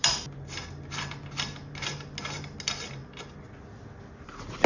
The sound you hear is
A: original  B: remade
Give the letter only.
A